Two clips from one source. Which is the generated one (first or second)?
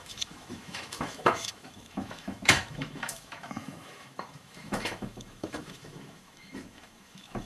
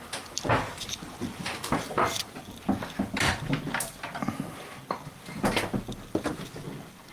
first